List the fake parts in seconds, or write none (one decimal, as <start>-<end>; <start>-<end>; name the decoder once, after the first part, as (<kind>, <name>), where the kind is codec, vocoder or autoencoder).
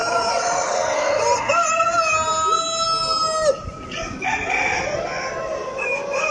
none